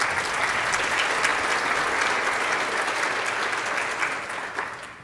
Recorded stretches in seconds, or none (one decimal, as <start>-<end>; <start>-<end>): 0.0-5.0